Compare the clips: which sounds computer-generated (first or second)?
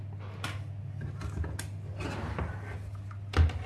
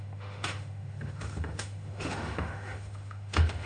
second